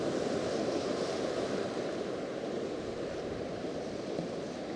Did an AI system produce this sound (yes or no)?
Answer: yes